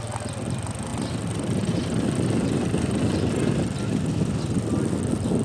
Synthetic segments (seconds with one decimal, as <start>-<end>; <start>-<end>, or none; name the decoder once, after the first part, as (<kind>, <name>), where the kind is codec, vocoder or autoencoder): none